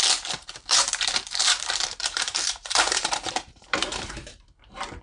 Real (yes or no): no